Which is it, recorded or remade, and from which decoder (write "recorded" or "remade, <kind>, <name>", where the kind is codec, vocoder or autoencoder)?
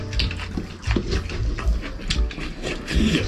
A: recorded